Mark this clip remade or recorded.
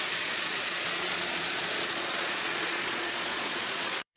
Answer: remade